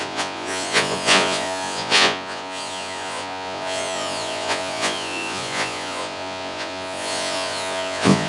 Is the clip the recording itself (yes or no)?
no